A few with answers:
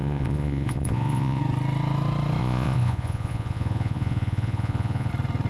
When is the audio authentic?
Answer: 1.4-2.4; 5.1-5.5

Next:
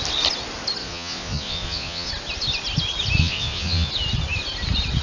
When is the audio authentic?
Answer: 0.0-0.8; 2.1-3.2; 3.9-5.0